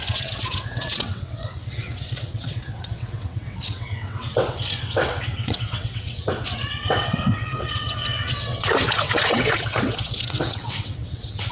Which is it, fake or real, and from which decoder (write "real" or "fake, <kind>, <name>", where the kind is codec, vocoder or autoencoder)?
fake, vocoder, WaveNeXt